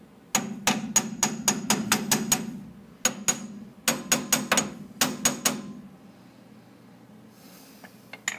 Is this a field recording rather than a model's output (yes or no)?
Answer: yes